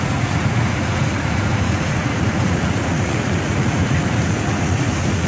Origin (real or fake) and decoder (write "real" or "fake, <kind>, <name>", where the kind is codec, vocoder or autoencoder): fake, vocoder, Vocos